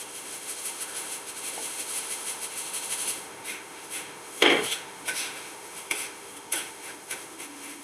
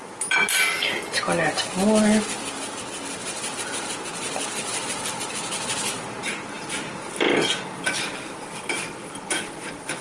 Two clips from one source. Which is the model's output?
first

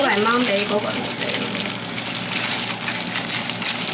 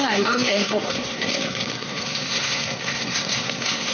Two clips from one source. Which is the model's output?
second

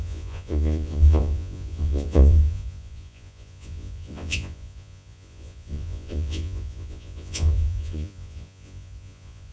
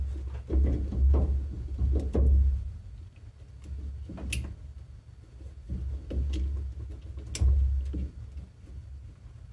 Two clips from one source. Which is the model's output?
first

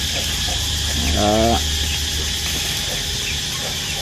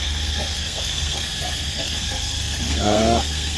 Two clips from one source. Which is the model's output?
second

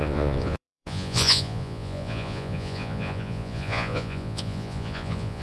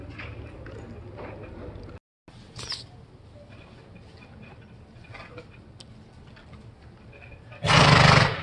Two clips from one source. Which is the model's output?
first